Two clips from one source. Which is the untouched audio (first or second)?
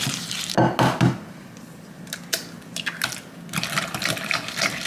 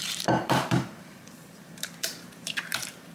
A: first